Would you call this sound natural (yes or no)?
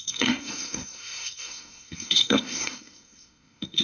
no